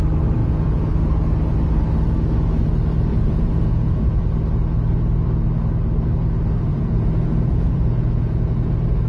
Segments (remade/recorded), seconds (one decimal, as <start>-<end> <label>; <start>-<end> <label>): 0.0-0.4 recorded; 0.4-1.0 remade; 1.0-3.1 recorded; 3.1-4.3 remade; 4.3-6.7 recorded; 6.7-8.7 remade; 8.7-9.1 recorded